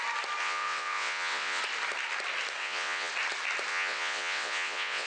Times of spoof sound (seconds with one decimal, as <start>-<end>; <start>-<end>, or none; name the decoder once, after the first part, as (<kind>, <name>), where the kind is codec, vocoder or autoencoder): 0.4-1.6 (vocoder, WaveNeXt); 2.6-3.1; 3.7-5.1